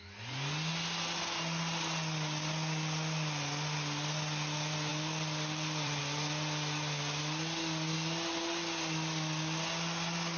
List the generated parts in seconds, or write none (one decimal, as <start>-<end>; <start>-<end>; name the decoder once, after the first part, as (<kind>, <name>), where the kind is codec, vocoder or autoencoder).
4.9-6.0 (vocoder, BigVGAN v2)

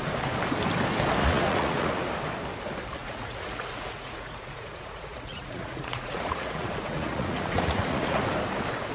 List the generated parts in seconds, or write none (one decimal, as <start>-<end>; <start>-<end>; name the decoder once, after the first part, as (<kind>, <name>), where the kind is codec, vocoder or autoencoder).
1.2-2.1 (vocoder, Vocos); 3.0-8.2